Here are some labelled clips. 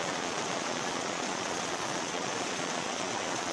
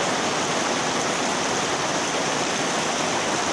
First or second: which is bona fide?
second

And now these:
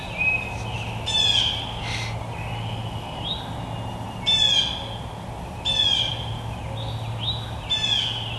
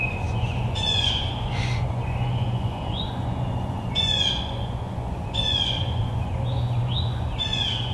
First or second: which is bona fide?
first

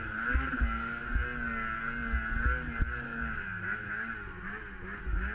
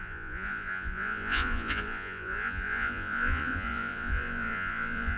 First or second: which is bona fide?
first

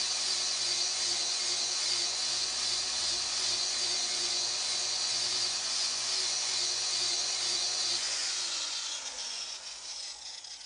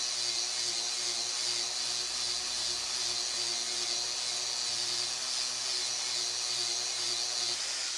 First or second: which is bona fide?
second